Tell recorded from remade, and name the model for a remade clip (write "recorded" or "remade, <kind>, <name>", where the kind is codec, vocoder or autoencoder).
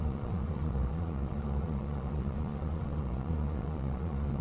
remade, vocoder, Vocos